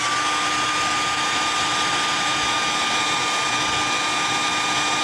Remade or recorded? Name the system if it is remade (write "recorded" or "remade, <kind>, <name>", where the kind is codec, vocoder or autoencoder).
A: recorded